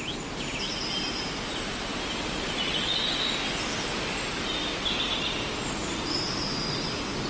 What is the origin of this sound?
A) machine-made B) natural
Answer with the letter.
B